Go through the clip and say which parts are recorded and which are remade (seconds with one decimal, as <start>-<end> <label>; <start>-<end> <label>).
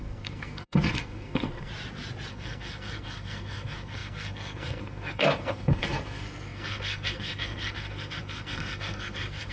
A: 0.0-1.7 remade; 1.7-2.3 recorded; 2.3-9.5 remade